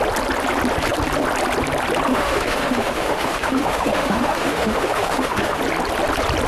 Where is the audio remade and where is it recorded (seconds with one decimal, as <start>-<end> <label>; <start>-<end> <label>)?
0.0-2.1 recorded; 2.1-5.6 remade; 5.6-6.5 recorded